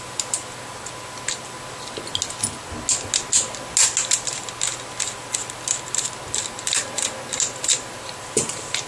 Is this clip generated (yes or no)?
no